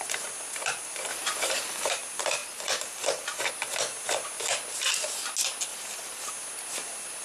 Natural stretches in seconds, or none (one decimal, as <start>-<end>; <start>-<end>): 0.0-1.1; 1.9-2.4; 3.5-5.7; 6.3-7.2